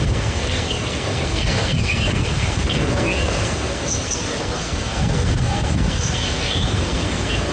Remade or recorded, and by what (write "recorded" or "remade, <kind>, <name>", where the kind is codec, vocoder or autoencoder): remade, codec, SNAC